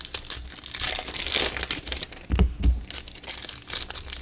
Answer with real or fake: real